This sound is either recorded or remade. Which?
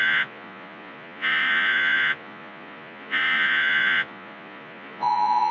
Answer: remade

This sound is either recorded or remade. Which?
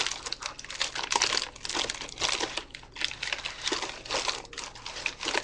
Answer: recorded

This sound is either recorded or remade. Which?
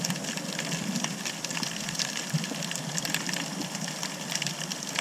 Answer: remade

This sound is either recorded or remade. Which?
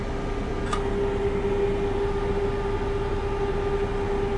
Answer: recorded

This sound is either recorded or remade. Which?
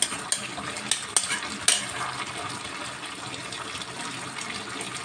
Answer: recorded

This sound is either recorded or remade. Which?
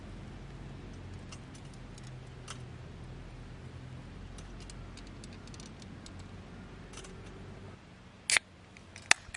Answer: recorded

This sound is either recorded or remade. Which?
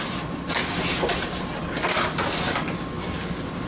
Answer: recorded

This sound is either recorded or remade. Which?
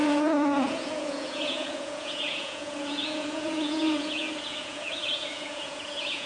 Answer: remade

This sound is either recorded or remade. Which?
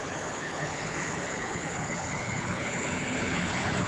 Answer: remade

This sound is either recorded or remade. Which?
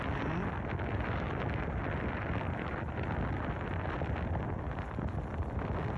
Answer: recorded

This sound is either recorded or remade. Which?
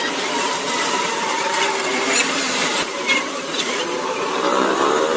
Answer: remade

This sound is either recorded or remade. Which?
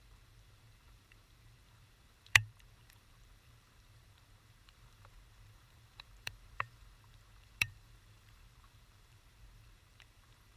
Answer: remade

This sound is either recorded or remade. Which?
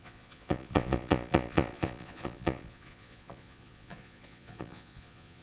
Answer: remade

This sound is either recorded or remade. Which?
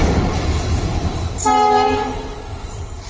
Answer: remade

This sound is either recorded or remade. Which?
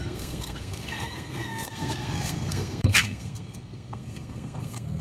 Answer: remade